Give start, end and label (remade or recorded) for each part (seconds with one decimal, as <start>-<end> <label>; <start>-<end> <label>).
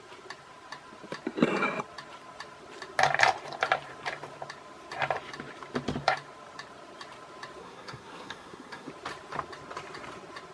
0.0-7.6 recorded; 7.6-8.9 remade; 8.9-10.5 recorded